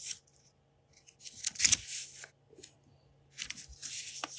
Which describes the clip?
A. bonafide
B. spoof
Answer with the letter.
A